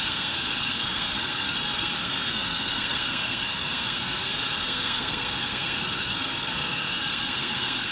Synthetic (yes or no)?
yes